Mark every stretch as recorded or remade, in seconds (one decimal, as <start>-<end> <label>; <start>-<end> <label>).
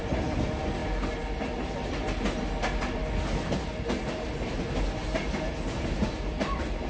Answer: 0.0-6.9 recorded